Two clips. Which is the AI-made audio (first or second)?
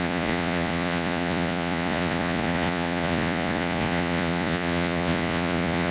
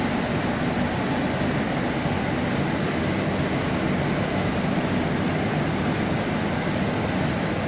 first